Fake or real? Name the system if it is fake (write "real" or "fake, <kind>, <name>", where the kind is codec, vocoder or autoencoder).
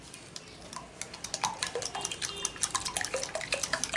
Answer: real